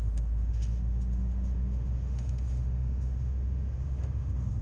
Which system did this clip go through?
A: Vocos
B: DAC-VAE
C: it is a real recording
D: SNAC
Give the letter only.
B